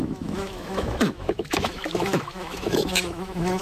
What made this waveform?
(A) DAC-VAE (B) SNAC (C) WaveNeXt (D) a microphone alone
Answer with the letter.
A